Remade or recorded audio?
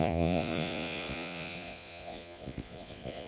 remade